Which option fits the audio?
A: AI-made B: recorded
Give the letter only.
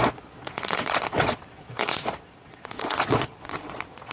A